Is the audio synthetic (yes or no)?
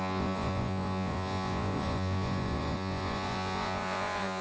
yes